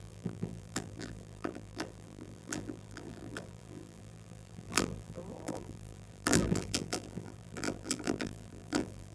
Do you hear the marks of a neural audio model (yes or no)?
yes